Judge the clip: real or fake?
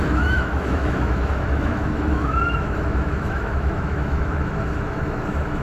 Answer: fake